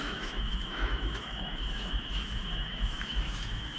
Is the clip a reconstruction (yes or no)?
yes